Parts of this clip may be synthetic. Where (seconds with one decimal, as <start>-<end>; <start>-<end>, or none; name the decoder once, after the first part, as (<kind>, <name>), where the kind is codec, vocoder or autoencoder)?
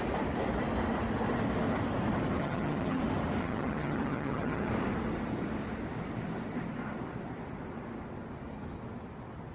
2.4-3.0 (vocoder, HiFi-GAN); 3.4-4.7